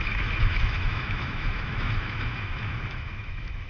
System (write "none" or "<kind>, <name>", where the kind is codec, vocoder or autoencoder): autoencoder, DAC-VAE